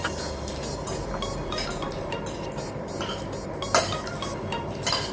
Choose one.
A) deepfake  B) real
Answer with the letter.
B